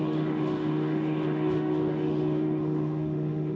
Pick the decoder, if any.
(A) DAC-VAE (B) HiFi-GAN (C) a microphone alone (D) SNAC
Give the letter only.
A